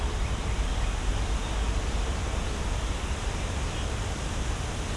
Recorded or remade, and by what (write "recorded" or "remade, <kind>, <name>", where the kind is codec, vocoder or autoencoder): recorded